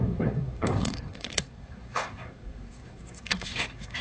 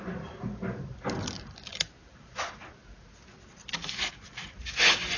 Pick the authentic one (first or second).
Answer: second